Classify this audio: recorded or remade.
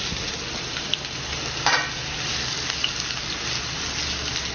recorded